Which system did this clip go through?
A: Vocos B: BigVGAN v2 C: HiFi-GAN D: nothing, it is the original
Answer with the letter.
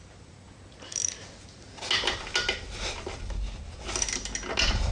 D